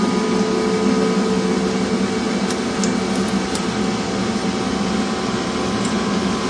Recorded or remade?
recorded